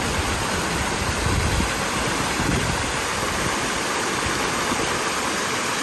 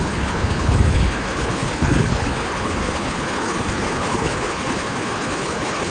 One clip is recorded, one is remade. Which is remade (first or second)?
second